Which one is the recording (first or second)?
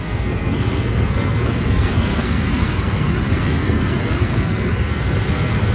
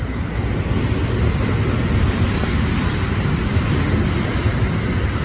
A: second